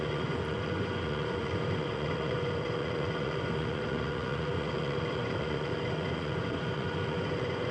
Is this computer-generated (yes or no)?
yes